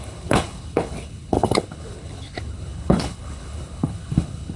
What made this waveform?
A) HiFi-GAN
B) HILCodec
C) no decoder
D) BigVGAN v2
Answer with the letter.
B